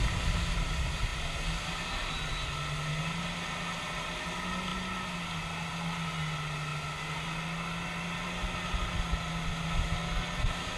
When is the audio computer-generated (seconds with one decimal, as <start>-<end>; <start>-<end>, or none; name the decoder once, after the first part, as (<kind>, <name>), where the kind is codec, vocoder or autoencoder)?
none